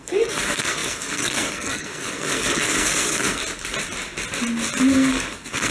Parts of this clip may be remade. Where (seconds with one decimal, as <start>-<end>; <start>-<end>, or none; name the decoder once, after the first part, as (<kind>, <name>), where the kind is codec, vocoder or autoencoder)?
0.0-3.4 (codec, SNAC); 4.9-5.7